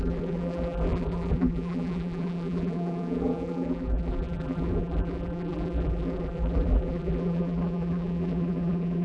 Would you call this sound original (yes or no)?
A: no